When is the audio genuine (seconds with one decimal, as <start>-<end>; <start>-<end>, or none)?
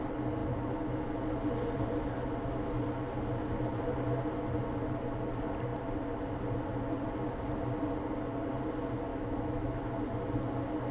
0.0-9.1; 9.9-10.9